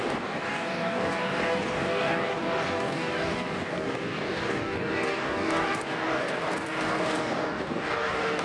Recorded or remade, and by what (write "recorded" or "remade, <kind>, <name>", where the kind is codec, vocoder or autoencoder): remade, codec, DAC